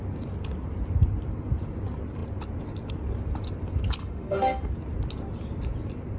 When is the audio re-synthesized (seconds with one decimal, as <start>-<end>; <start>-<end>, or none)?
4.0-4.7